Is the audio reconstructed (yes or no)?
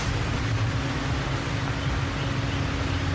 no